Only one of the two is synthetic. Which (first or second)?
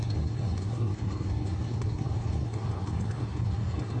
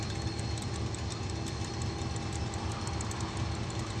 first